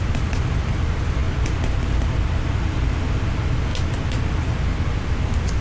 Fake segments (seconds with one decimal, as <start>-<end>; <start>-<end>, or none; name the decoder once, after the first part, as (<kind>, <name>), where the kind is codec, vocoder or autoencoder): none